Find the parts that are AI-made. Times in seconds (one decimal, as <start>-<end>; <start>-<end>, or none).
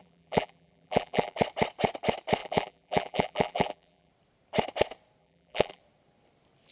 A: 0.0-1.4; 2.4-4.1; 5.2-5.8